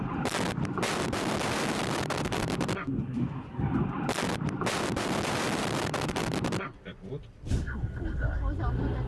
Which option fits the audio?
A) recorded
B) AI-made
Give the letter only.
B